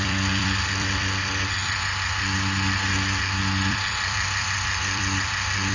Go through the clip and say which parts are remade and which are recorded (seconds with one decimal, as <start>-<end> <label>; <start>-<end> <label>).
0.0-5.7 remade